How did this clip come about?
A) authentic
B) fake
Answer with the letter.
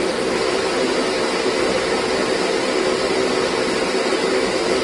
A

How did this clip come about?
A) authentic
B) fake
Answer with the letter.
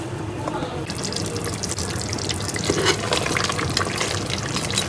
A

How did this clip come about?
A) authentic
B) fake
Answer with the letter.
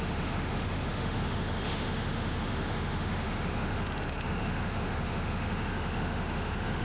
B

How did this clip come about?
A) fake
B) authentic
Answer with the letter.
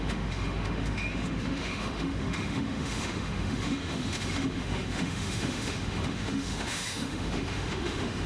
A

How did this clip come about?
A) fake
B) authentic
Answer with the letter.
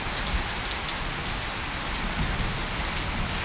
B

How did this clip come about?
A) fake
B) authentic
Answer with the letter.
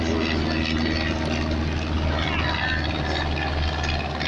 B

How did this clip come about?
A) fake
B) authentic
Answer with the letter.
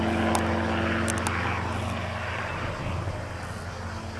B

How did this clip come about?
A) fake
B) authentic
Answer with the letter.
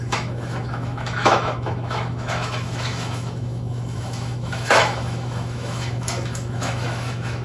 A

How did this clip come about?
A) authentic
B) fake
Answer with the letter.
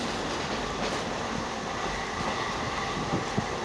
A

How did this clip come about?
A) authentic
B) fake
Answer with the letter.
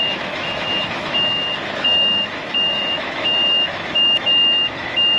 B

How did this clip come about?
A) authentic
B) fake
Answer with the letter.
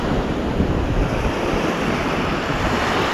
A